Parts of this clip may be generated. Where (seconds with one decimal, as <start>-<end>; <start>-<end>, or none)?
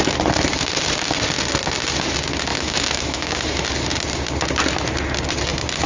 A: 2.5-3.4